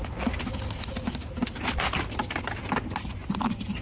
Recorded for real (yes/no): yes